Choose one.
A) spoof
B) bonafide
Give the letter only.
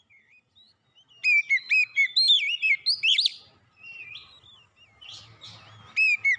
B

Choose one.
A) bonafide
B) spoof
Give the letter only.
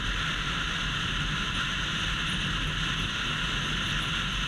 A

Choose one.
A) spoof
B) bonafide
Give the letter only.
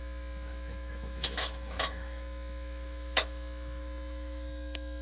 A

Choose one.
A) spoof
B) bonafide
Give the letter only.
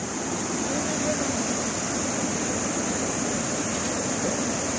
B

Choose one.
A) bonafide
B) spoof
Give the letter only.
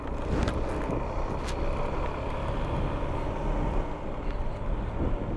A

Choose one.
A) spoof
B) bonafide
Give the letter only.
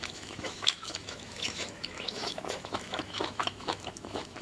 A